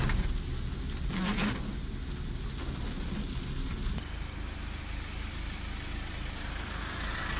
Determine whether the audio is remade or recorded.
recorded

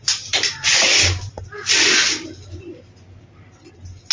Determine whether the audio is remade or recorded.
recorded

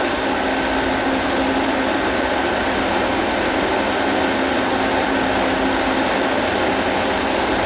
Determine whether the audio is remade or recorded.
recorded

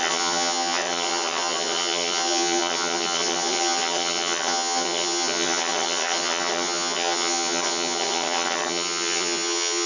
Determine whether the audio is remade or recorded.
remade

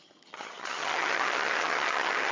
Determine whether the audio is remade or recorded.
remade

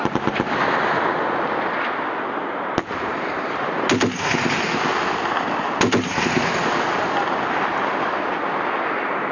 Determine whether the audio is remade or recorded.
recorded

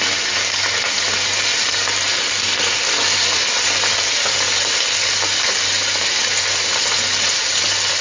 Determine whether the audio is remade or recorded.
recorded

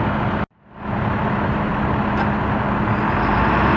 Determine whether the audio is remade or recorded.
recorded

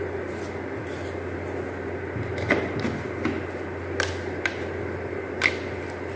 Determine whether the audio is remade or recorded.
recorded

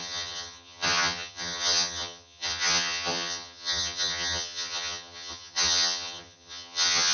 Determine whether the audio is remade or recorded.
remade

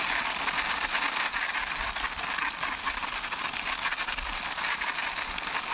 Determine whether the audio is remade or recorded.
recorded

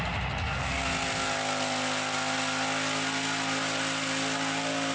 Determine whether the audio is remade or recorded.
recorded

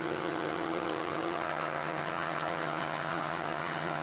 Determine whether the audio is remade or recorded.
remade